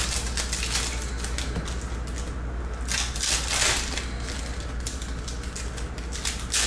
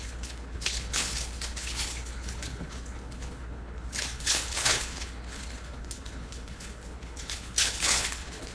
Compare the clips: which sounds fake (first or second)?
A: second